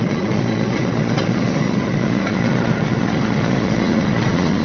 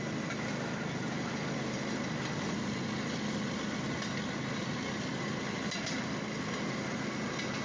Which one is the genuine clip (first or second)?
second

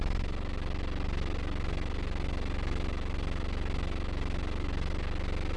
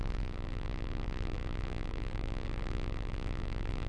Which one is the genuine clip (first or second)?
first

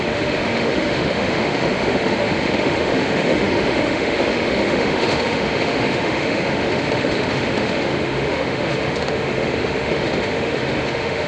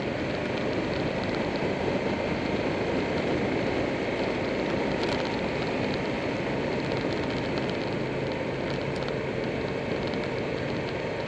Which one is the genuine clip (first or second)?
second